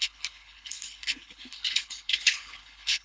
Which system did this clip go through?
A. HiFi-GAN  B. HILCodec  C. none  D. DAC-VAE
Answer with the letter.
B